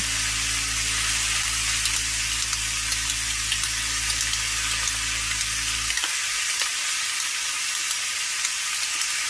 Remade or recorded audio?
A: recorded